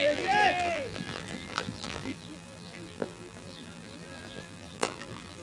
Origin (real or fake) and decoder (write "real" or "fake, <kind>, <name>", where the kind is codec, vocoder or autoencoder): fake, vocoder, BigVGAN v2